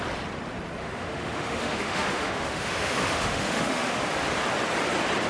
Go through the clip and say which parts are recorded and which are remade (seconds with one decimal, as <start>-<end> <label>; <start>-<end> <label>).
0.0-0.8 recorded; 0.8-4.0 remade; 4.0-5.3 recorded